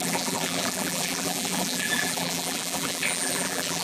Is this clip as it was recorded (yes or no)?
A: no